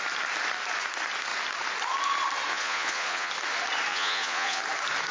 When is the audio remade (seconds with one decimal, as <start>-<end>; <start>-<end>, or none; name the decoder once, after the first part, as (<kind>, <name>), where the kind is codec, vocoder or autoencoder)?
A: 2.5-3.3 (vocoder, Vocos); 3.9-4.6